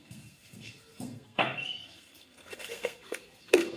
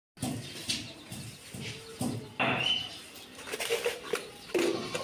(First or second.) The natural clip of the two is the second